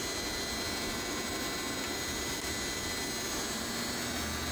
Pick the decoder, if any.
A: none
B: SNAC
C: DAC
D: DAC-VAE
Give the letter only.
A